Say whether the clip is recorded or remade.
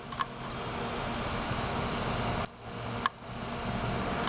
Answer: recorded